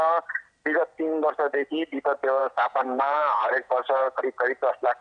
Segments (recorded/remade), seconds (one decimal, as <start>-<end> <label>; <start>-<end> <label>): 0.0-2.4 recorded; 2.4-4.2 remade; 4.2-5.0 recorded